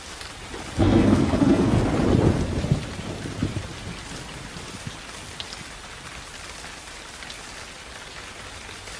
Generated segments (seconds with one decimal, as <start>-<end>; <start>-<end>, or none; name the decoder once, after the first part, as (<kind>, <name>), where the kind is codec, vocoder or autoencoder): 0.8-1.8 (codec, SNAC)